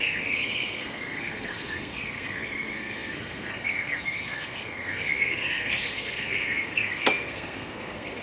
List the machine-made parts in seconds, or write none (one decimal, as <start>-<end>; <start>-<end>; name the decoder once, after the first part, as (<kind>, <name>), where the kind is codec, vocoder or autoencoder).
0.0-8.2 (codec, SNAC)